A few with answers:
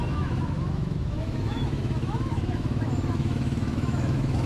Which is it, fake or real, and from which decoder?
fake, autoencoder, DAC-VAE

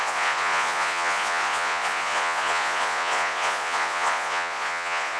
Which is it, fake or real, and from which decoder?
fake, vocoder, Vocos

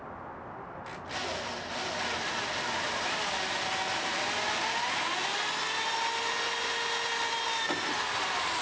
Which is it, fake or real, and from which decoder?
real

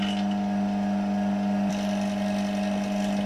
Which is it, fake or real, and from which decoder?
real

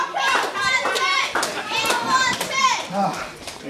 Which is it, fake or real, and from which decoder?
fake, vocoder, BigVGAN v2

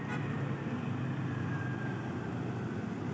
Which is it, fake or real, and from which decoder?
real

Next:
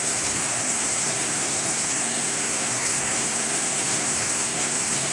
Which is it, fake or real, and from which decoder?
fake, codec, SNAC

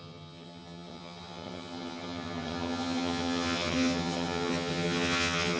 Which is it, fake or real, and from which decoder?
fake, vocoder, HiFi-GAN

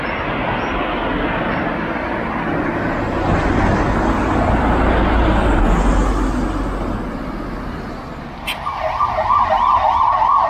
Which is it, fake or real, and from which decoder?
real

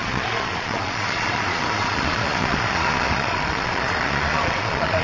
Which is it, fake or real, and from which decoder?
fake, vocoder, Vocos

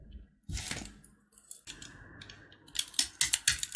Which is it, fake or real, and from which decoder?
real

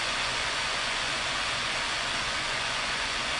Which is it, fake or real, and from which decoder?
fake, vocoder, Vocos